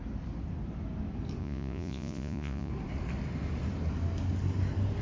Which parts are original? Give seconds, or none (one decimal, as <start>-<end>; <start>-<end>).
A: 0.0-1.4; 2.7-5.0